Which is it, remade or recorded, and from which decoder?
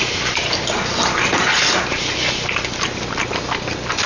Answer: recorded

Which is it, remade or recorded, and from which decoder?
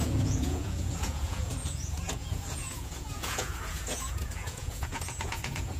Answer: remade, vocoder, Vocos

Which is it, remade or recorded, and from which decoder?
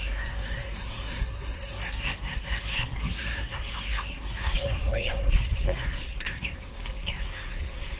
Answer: remade, codec, SNAC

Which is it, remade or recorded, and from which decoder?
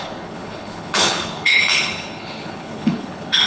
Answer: remade, codec, HILCodec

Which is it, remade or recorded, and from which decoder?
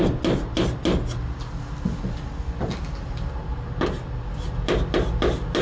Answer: recorded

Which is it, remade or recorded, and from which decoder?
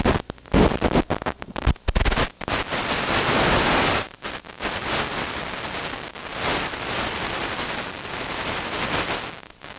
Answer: recorded